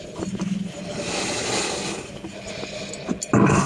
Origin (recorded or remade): recorded